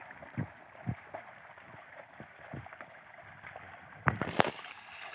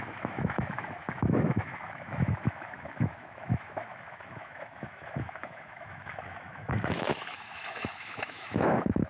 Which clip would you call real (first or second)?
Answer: first